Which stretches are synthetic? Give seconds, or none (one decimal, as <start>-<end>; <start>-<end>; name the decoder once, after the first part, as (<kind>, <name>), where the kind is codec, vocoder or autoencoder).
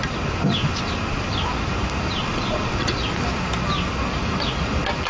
2.2-3.0 (vocoder, Vocos)